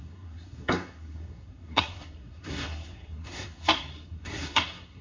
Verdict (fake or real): fake